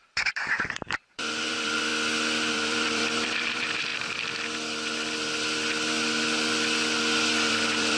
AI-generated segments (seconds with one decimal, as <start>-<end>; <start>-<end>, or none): 0.0-1.9; 2.5-3.9; 7.5-8.0